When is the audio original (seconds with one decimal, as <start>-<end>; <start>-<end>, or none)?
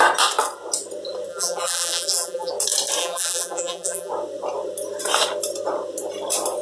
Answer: 0.0-1.3; 2.5-3.0; 4.1-6.6